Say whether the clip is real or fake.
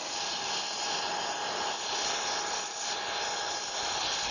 real